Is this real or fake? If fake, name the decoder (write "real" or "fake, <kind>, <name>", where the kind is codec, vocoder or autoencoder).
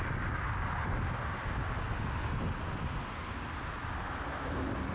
real